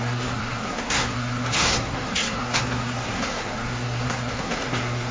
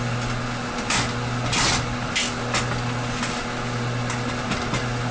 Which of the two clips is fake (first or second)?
first